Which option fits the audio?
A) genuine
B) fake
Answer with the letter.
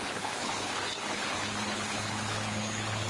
B